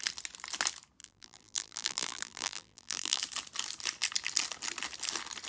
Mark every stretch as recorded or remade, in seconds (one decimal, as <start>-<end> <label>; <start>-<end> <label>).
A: 0.0-1.0 recorded; 1.0-3.2 remade; 3.2-5.5 recorded